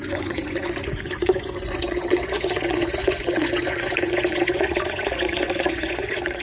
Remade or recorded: remade